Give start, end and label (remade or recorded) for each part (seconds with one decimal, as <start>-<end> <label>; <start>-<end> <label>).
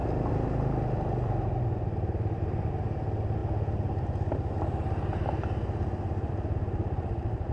0.0-7.5 recorded